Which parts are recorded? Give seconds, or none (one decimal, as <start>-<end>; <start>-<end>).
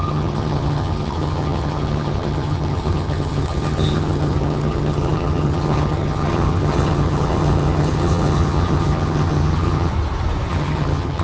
9.9-10.5